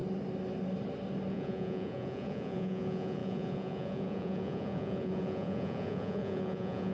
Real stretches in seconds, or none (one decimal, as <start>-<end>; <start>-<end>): 0.0-1.3